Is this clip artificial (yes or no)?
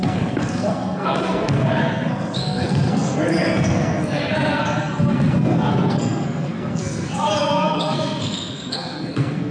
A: yes